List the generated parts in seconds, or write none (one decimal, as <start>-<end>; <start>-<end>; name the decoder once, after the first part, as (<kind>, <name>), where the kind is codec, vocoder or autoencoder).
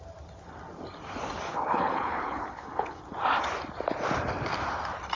1.5-3.0 (codec, HILCodec)